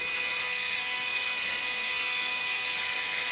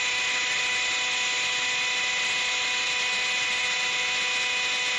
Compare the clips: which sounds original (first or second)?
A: second